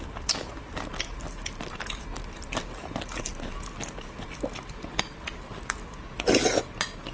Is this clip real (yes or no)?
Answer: yes